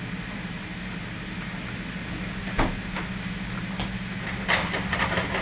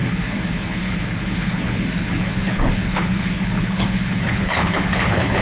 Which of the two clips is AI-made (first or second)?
second